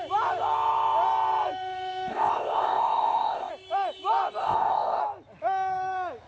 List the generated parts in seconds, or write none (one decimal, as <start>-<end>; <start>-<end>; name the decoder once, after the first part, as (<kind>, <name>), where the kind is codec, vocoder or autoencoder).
2.1-3.5 (codec, ZipCodec); 4.4-5.0